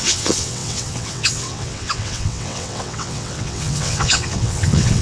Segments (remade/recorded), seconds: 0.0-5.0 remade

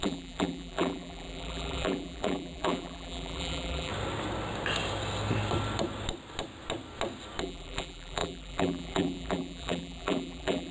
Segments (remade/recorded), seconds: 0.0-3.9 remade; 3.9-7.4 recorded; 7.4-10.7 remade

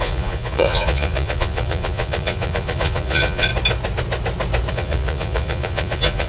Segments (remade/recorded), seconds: 0.0-3.5 remade; 3.5-4.7 recorded; 4.7-6.3 remade

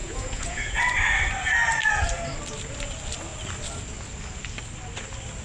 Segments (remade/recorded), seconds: 0.0-0.8 remade; 0.8-5.4 recorded

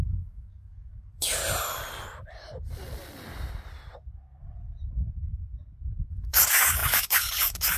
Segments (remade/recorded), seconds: 0.0-1.4 remade; 1.4-6.1 recorded; 6.1-7.8 remade

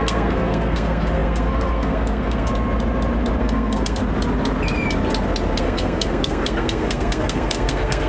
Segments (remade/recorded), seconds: 0.0-2.5 remade; 2.5-3.4 recorded; 3.4-4.0 remade; 4.0-5.6 recorded; 5.6-8.1 remade